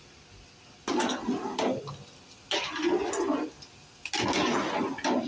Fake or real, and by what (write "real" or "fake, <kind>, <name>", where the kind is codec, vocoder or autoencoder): real